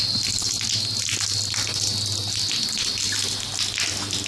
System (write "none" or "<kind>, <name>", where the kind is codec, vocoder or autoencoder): none